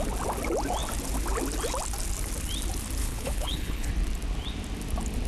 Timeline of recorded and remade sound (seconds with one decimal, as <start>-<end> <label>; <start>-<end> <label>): 0.0-3.0 recorded; 3.0-3.9 remade; 3.9-5.3 recorded